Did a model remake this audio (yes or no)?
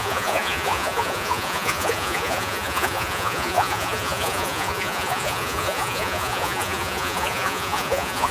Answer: yes